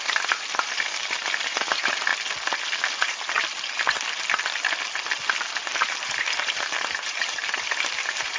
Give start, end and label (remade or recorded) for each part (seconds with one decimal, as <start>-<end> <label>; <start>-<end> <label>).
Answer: 0.0-2.1 remade; 2.1-5.6 recorded; 5.6-8.4 remade